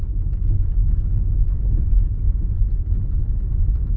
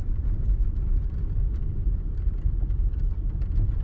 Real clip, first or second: first